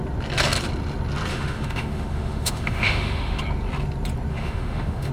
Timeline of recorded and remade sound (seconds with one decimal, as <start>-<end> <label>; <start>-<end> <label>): 0.0-1.3 recorded; 1.3-3.4 remade; 3.4-4.3 recorded; 4.3-5.1 remade